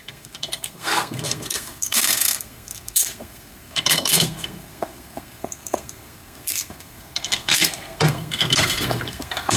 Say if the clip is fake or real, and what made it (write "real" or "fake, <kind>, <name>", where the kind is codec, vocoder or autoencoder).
fake, codec, SNAC